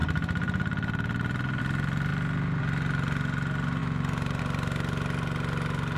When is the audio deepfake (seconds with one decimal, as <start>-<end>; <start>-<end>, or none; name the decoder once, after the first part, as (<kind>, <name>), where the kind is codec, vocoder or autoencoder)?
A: none